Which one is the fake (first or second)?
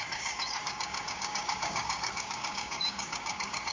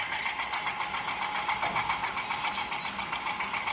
first